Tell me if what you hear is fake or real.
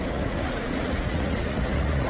fake